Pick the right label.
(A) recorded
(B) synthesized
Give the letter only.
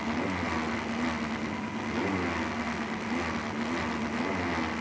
A